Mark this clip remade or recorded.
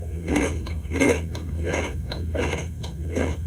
remade